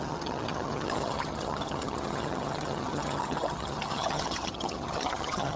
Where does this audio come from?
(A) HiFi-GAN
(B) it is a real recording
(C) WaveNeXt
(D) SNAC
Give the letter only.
A